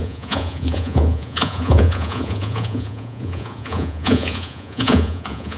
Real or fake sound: fake